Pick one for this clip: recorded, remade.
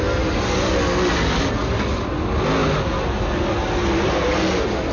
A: recorded